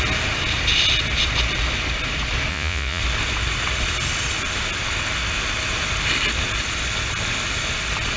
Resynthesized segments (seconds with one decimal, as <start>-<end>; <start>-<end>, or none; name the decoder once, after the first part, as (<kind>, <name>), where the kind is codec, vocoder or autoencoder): 2.5-3.0 (vocoder, Vocos)

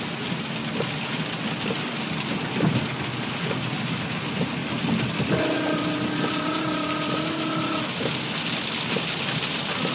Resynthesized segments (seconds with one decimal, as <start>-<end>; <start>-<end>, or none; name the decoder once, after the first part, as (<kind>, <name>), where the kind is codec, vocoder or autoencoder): none